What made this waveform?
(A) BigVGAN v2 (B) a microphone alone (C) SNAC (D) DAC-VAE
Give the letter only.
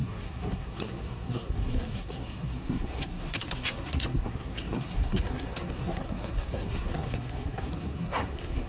C